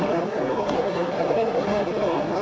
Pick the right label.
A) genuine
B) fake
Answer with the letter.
B